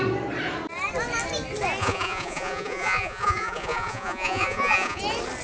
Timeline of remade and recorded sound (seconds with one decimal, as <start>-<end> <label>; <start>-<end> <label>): 0.0-1.8 recorded; 1.8-5.0 remade; 5.0-5.4 recorded